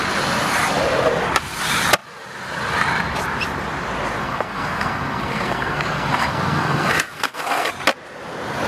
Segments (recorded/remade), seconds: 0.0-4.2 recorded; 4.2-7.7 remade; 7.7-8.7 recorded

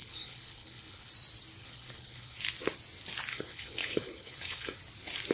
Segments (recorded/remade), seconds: 0.0-1.1 remade; 1.1-1.6 recorded; 1.6-2.4 remade; 2.4-3.3 recorded; 3.3-4.8 remade; 4.8-5.3 recorded

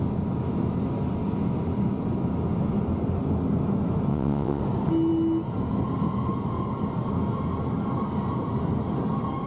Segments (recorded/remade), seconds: 0.0-4.1 recorded; 4.1-4.6 remade; 4.6-9.5 recorded